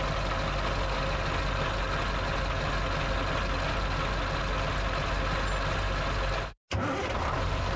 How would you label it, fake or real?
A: real